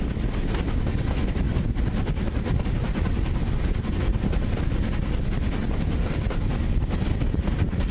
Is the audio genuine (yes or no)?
yes